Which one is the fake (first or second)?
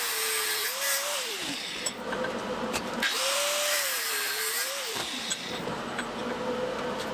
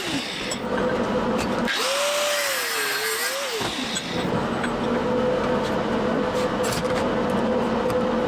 first